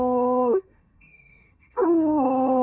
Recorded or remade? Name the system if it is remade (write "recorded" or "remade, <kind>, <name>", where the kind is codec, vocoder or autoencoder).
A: remade, codec, SNAC